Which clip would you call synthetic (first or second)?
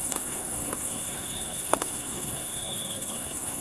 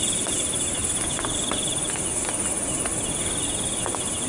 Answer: first